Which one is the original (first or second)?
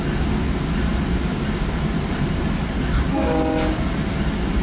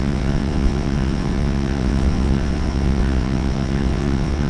first